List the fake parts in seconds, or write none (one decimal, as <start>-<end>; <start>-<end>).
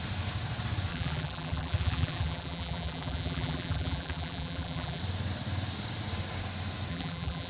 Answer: 0.9-5.0; 6.9-7.5